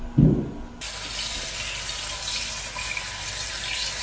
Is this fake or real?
real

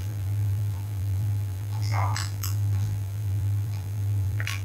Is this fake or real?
fake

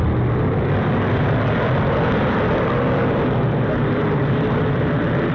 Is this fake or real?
fake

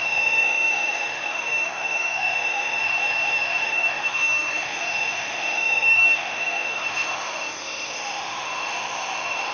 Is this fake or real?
fake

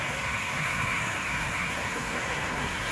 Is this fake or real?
fake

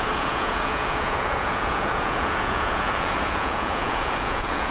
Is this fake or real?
fake